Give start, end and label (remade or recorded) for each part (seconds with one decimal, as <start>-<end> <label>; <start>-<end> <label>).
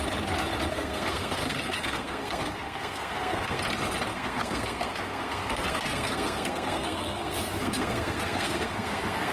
0.0-0.7 recorded; 0.7-3.6 remade; 3.6-4.1 recorded; 4.1-9.3 remade